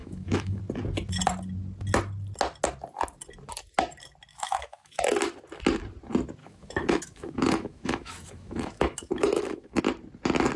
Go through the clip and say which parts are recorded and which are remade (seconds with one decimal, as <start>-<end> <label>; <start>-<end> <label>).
0.0-0.6 remade; 0.6-4.3 recorded; 4.3-5.0 remade; 5.0-6.4 recorded; 6.4-9.8 remade; 9.8-10.6 recorded